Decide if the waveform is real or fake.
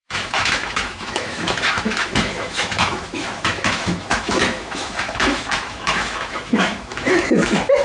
fake